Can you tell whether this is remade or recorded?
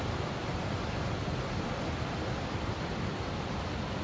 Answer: recorded